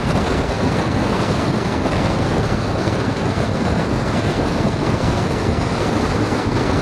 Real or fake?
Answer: fake